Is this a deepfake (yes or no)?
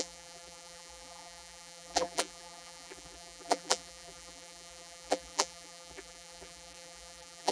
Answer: yes